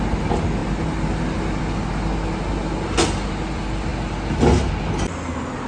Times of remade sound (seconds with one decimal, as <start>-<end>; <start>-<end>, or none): none